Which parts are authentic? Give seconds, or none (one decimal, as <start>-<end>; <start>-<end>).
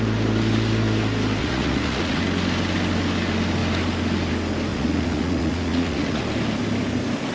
0.0-1.4; 2.2-4.7; 6.2-7.3